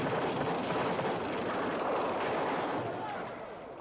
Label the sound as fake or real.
real